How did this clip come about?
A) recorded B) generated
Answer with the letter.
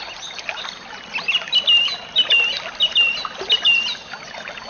A